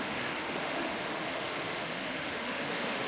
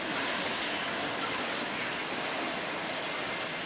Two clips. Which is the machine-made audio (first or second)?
first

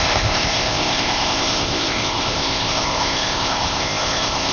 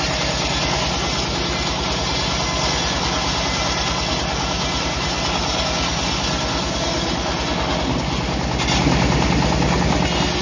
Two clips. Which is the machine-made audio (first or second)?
first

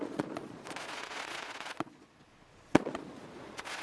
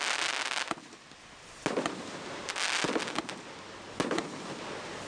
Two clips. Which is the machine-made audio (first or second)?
first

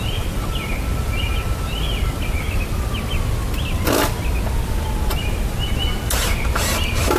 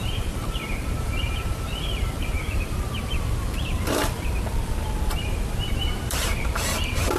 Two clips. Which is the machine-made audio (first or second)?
second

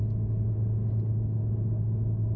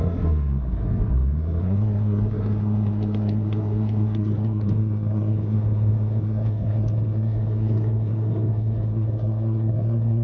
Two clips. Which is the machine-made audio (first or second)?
second